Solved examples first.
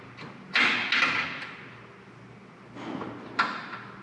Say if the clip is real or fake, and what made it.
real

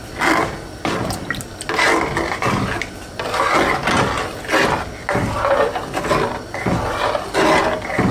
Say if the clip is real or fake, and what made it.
real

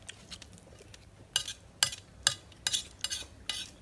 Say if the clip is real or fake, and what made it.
real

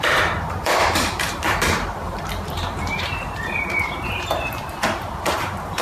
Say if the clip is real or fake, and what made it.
fake, vocoder, BigVGAN v2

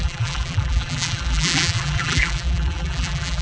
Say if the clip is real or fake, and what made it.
fake, vocoder, BigVGAN v2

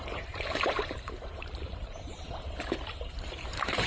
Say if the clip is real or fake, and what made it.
fake, vocoder, BigVGAN v2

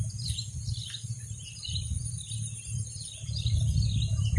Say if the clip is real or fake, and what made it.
fake, vocoder, BigVGAN v2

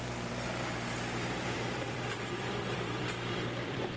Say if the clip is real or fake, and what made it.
fake, vocoder, BigVGAN v2